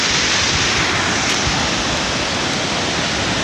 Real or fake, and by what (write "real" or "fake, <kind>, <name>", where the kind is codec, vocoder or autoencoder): real